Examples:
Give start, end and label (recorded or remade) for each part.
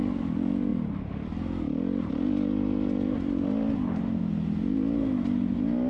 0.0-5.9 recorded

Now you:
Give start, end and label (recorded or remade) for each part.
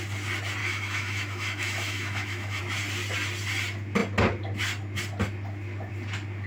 0.0-0.6 recorded; 0.6-2.6 remade; 2.6-6.5 recorded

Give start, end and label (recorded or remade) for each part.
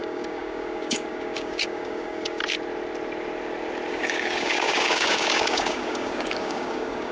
0.0-2.4 remade; 2.4-3.9 recorded; 3.9-7.1 remade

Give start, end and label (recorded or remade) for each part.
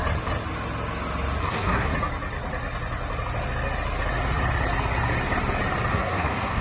0.0-1.4 recorded; 1.4-1.9 remade; 1.9-5.9 recorded; 5.9-6.6 remade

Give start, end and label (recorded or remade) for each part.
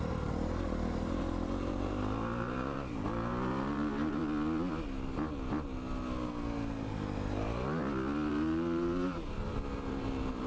0.0-4.2 remade; 4.2-8.3 recorded; 8.3-10.5 remade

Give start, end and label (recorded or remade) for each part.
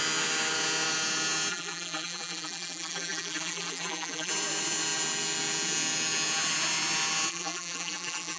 0.0-1.5 recorded; 1.5-4.3 remade; 4.3-7.3 recorded; 7.3-8.4 remade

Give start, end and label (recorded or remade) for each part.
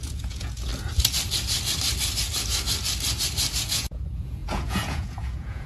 0.0-0.7 remade; 0.7-3.6 recorded; 3.6-5.7 remade